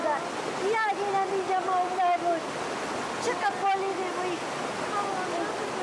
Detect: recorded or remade recorded